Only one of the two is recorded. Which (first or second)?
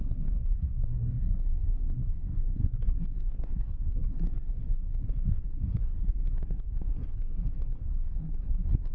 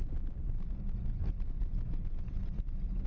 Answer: second